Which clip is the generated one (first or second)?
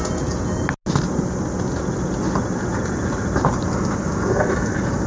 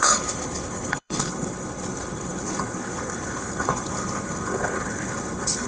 second